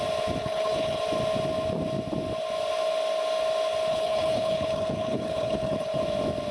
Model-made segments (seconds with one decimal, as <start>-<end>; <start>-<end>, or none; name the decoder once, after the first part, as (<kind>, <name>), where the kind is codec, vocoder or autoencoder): 0.4-1.0 (codec, HILCodec); 3.9-6.0